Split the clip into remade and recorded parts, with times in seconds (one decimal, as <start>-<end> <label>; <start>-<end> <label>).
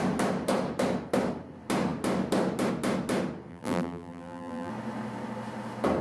0.0-3.5 recorded; 3.5-4.7 remade; 4.7-6.0 recorded